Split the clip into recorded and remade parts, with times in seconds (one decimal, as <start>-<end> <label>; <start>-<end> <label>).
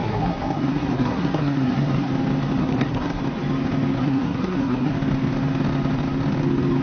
0.0-2.1 remade; 2.1-2.6 recorded; 2.6-3.2 remade; 3.2-4.0 recorded; 4.0-4.9 remade; 4.9-6.8 recorded